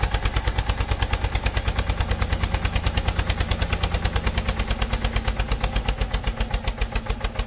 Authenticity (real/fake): real